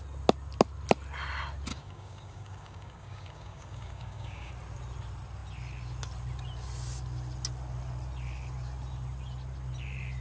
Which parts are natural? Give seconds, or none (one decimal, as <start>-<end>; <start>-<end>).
0.0-1.7; 4.5-10.2